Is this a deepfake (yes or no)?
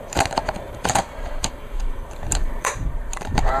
yes